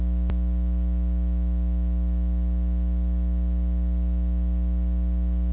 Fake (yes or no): no